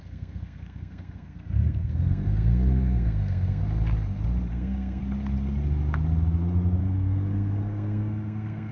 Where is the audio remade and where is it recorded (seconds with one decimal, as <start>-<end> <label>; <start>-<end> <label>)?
0.0-3.6 remade; 3.6-4.5 recorded; 4.5-5.0 remade; 5.0-6.8 recorded; 6.8-8.7 remade